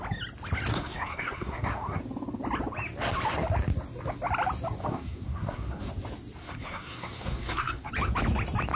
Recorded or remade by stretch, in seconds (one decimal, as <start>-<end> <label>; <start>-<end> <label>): 0.0-0.7 recorded; 0.7-2.0 remade; 2.0-4.8 recorded; 4.8-5.9 remade; 5.9-6.4 recorded; 6.4-7.9 remade; 7.9-8.8 recorded